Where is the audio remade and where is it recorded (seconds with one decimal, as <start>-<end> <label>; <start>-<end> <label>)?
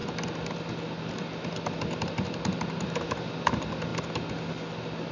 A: 0.0-5.1 recorded